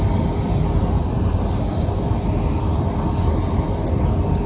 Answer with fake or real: real